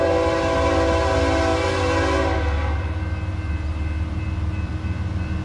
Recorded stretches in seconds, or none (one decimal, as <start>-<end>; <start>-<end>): 0.0-5.4